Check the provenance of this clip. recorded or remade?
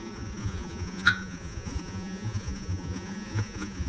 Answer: remade